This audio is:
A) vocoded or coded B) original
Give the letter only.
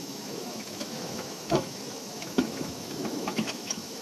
A